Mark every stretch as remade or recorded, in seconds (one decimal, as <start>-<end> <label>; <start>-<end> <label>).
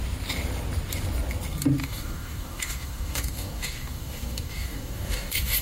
0.0-1.8 recorded; 1.8-5.6 remade